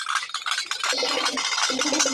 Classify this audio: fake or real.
real